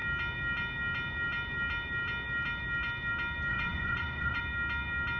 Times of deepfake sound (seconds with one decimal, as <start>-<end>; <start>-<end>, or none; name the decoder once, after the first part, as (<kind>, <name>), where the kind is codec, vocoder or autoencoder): 3.5-4.4 (vocoder, Vocos)

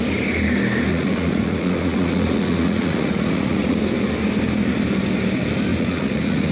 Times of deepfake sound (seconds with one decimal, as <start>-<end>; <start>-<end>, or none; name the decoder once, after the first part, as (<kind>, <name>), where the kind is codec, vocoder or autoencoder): 0.9-3.8 (vocoder, Vocos); 5.7-6.5